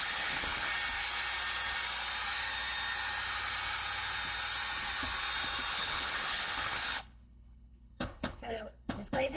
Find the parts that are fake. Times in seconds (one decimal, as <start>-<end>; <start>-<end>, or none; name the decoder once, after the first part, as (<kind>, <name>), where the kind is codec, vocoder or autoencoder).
0.0-0.7 (codec, HILCodec); 5.7-9.4